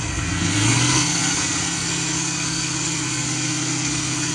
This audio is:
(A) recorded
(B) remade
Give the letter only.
B